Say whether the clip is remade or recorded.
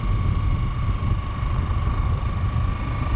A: recorded